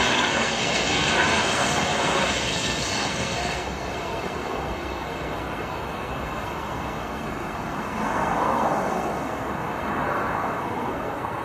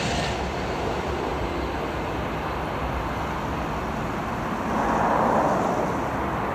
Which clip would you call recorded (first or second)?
second